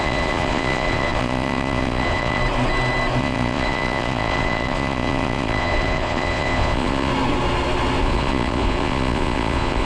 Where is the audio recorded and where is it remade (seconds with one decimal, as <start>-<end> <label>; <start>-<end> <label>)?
0.0-2.4 remade; 2.4-3.2 recorded; 3.2-7.1 remade; 7.1-8.0 recorded; 8.0-9.8 remade